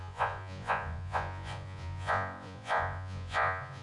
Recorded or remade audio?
remade